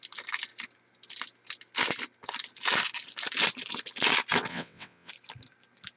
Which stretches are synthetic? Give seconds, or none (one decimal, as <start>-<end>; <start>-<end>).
4.5-5.1